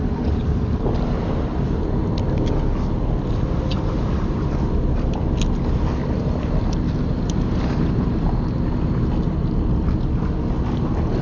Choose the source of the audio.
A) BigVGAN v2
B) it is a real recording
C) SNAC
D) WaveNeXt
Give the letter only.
B